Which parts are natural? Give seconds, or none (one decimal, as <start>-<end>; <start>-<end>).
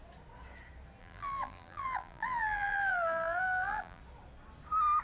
0.0-1.0; 4.0-5.0